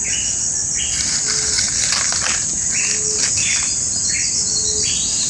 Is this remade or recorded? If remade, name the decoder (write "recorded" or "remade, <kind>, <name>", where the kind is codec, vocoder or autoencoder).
recorded